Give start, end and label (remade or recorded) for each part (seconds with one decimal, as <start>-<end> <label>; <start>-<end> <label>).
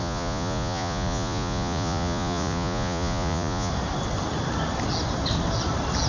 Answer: 0.0-3.7 remade; 3.7-6.1 recorded